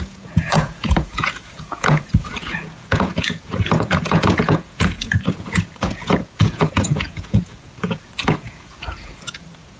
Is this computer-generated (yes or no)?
yes